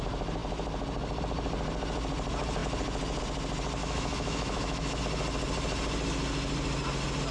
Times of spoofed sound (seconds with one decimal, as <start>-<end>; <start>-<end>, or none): 3.8-5.0